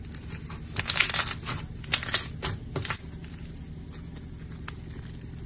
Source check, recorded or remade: recorded